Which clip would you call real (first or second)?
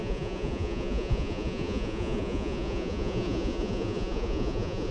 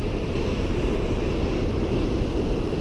second